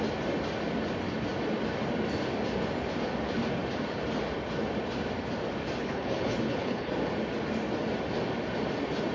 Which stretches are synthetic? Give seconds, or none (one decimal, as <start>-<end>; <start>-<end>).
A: 5.8-6.9